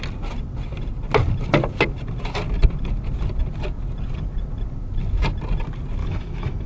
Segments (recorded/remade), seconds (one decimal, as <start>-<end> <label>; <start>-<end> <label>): 0.0-6.0 recorded; 6.0-6.7 remade